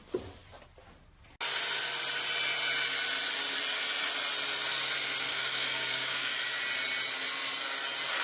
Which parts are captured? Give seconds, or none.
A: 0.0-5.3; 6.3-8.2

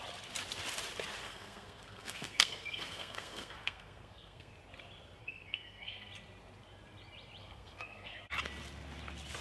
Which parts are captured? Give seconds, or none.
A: 0.0-1.2; 4.5-5.2; 6.1-7.4; 8.2-9.4

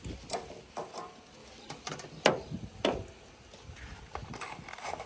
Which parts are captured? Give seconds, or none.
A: 0.0-5.1

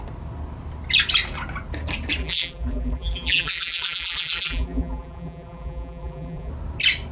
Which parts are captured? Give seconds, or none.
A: 0.0-2.2; 6.5-7.1